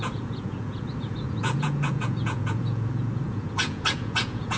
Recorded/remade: remade